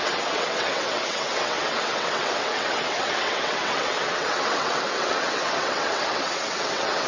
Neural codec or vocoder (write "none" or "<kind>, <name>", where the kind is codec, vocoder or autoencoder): vocoder, WaveNeXt